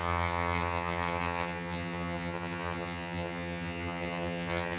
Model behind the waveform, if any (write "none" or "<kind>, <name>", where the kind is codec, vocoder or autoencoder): vocoder, HiFi-GAN